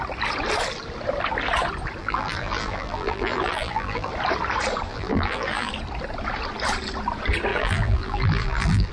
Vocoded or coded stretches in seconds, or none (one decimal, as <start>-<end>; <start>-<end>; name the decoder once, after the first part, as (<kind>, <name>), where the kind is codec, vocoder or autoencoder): 2.0-4.1 (vocoder, BigVGAN v2); 4.9-5.7; 7.5-8.9